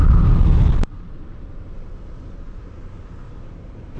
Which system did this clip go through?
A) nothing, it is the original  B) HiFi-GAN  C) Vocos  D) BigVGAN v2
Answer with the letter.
A